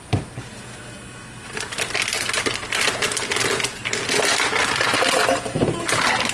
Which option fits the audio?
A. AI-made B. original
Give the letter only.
B